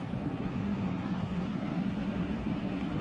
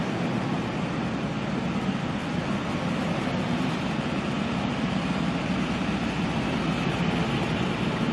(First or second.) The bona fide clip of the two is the second